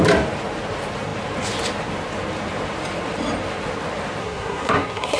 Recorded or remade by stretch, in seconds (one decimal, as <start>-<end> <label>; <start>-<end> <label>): 0.0-4.2 recorded; 4.2-5.2 remade